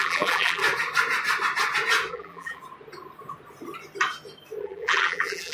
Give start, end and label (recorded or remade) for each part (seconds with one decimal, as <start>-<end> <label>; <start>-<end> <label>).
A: 0.0-0.6 remade; 0.6-2.1 recorded; 2.1-2.6 remade; 2.6-4.6 recorded; 4.6-5.5 remade